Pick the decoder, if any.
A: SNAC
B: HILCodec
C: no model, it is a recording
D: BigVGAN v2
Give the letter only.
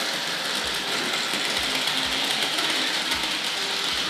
C